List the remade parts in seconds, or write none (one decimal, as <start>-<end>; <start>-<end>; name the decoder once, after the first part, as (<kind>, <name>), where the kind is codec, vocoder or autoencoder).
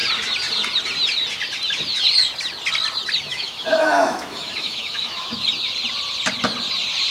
3.3-5.4 (autoencoder, DAC-VAE)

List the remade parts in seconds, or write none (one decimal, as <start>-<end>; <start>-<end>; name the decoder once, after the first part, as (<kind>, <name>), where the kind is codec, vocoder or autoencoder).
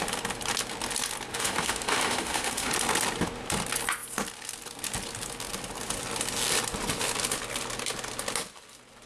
1.3-2.7 (autoencoder, DAC-VAE)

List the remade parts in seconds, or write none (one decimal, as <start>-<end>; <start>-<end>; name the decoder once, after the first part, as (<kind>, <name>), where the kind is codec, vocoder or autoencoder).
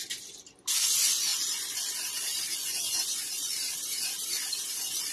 2.6-3.2 (vocoder, Vocos)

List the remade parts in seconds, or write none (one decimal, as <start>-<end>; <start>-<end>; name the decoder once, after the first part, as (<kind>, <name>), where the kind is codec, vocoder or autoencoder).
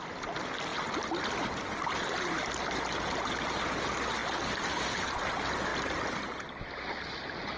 none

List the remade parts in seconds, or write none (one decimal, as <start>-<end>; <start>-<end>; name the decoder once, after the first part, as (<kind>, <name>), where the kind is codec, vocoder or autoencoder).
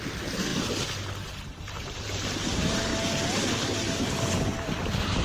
0.0-0.5 (vocoder, BigVGAN v2); 1.2-2.9; 4.6-5.2